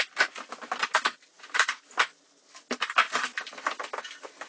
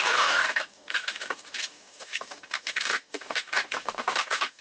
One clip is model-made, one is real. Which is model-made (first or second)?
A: second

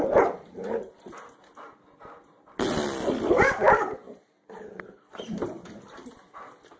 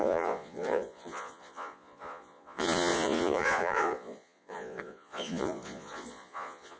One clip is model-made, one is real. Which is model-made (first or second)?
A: second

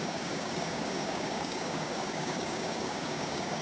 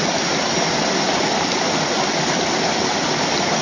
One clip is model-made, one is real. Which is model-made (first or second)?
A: first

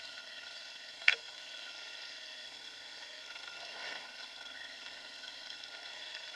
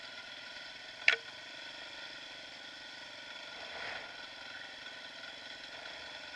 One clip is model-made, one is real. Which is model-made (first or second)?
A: first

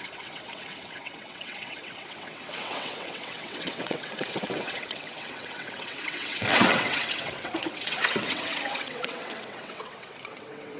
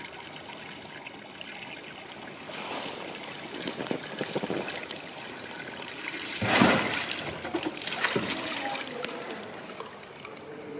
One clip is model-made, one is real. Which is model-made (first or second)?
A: first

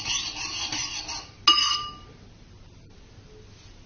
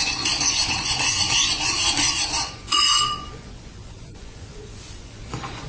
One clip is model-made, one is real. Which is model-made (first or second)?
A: second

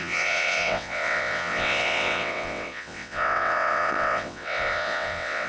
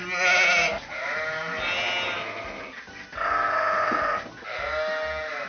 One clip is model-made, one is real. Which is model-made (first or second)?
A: first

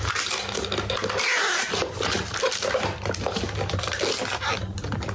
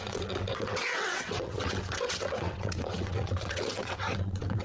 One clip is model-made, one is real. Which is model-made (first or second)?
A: second